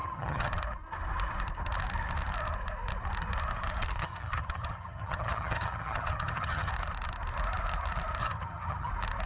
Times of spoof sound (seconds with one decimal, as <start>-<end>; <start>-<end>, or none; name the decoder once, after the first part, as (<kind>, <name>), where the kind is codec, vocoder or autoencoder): 0.0-0.5 (vocoder, HiFi-GAN); 4.0-6.7; 8.2-8.9

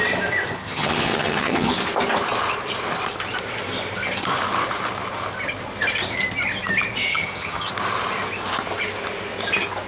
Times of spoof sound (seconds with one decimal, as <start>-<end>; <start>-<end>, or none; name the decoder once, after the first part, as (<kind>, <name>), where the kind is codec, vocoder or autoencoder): 0.6-1.7 (vocoder, HiFi-GAN); 7.1-7.7

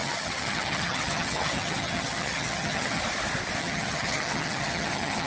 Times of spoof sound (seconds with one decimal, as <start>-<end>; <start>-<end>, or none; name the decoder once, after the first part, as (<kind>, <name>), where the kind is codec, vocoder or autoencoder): 0.0-3.0 (vocoder, HiFi-GAN); 3.6-5.3

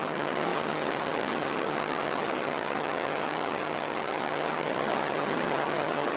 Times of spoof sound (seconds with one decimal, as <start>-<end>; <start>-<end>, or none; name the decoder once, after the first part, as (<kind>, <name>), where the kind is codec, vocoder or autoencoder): 0.0-6.2 (vocoder, HiFi-GAN)

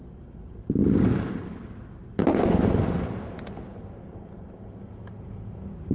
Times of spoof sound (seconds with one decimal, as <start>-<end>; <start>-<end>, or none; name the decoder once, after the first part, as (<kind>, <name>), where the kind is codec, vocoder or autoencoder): none

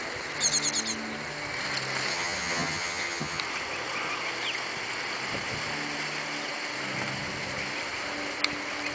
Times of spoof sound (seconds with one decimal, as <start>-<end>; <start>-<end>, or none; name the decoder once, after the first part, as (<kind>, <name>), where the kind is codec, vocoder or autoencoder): 2.1-3.4 (vocoder, HiFi-GAN)

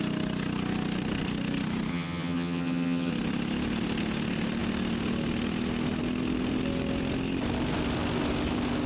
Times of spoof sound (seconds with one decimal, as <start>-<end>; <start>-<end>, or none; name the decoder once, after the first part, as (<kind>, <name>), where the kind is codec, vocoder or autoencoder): 1.9-3.1 (vocoder, HiFi-GAN)